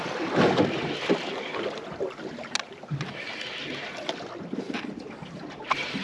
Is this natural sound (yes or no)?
yes